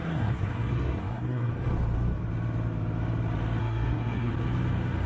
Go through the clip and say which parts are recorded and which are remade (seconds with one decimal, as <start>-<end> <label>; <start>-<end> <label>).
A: 0.0-1.5 remade; 1.5-3.6 recorded; 3.6-4.3 remade; 4.3-5.1 recorded